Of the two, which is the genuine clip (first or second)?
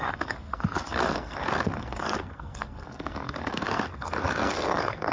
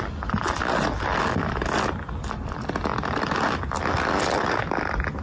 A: second